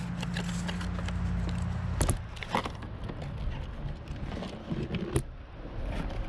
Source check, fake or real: real